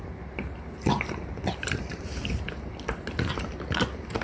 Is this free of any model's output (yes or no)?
yes